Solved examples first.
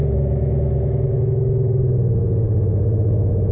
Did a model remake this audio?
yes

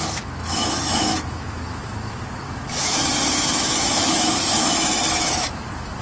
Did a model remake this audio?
yes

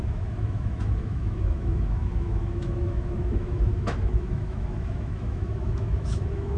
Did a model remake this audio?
yes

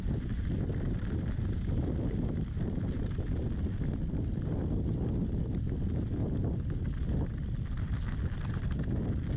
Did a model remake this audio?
no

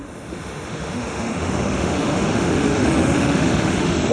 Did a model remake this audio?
yes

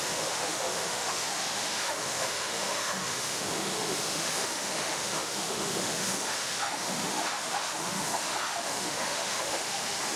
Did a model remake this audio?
yes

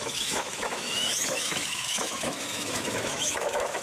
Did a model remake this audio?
yes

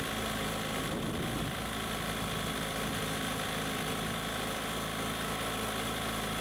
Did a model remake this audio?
no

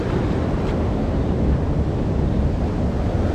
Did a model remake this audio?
no